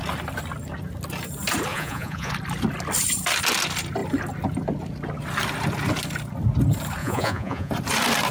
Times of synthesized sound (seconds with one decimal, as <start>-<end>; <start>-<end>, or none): 1.7-2.3; 7.0-7.7